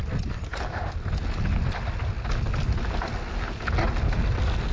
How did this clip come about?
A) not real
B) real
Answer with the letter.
B